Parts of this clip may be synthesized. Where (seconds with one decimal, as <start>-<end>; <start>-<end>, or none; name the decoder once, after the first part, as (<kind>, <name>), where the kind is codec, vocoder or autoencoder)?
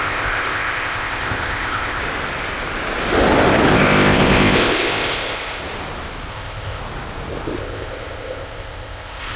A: 0.0-2.0 (codec, ZipCodec); 3.7-5.6; 6.3-6.8; 7.6-9.4